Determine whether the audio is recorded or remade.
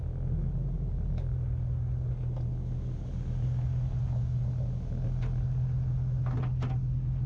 recorded